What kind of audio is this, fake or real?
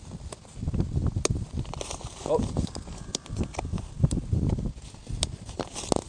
real